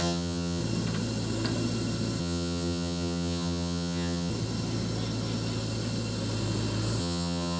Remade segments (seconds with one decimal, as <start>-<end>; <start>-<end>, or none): 0.0-0.6; 2.2-4.3; 7.0-7.6